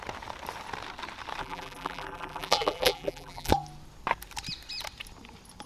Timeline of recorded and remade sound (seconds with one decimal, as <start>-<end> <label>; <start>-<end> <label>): 0.0-1.4 recorded; 1.4-3.5 remade; 3.5-5.7 recorded